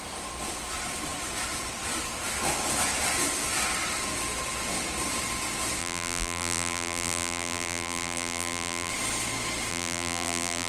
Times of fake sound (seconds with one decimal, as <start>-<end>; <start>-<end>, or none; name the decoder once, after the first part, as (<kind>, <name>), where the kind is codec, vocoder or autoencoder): 5.8-8.9 (vocoder, BigVGAN v2); 9.7-10.7